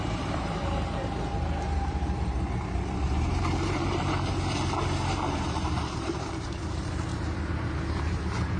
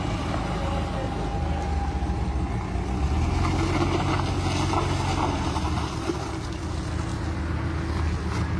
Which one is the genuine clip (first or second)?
second